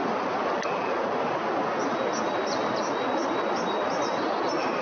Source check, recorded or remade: recorded